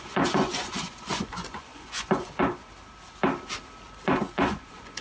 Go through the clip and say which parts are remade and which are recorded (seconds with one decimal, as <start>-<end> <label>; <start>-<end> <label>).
0.0-2.7 remade; 2.7-4.0 recorded; 4.0-5.0 remade